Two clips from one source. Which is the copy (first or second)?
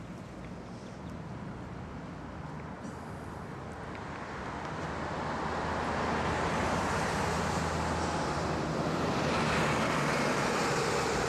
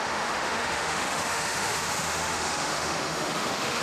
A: second